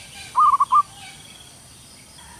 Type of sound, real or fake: real